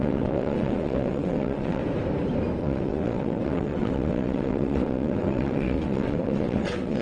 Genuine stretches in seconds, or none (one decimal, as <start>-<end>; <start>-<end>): 1.8-2.6